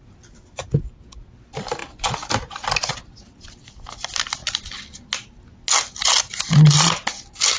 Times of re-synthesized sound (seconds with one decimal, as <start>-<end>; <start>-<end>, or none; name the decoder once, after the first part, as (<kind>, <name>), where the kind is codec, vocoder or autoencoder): none